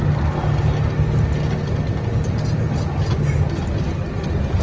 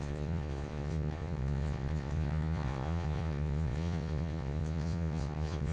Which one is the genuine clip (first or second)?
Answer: first